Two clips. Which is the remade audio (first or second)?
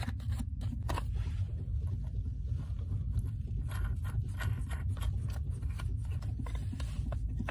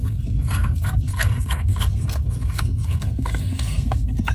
second